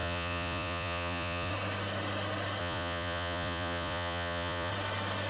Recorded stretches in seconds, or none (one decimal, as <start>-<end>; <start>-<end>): 1.5-2.6; 4.7-5.3